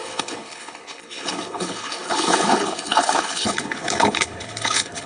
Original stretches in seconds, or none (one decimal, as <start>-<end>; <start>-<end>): none